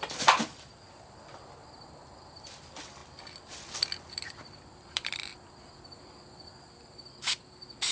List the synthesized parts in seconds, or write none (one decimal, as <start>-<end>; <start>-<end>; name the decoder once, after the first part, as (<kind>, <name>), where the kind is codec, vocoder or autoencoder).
0.0-3.0 (vocoder, BigVGAN v2); 4.1-7.9